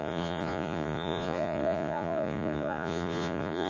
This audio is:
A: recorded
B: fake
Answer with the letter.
B